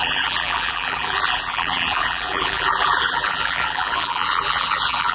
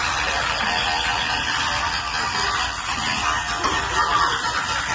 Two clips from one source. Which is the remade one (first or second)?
first